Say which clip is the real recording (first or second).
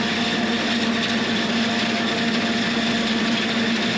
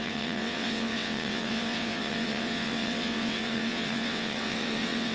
first